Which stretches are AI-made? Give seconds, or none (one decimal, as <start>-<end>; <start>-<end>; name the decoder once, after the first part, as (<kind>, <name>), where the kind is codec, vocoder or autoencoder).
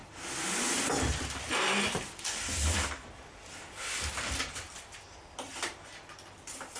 none